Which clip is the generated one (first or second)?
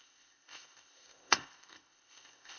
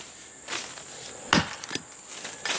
first